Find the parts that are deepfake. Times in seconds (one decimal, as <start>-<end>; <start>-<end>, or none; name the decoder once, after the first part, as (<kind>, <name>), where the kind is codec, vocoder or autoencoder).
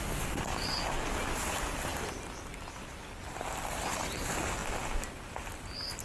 none